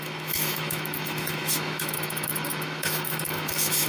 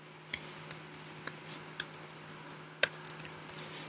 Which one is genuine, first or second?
second